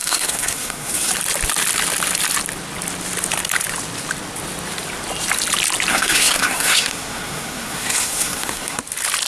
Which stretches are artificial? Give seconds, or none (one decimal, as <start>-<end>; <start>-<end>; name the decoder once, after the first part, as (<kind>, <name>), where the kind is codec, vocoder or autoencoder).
0.0-1.1 (codec, SNAC); 5.9-8.8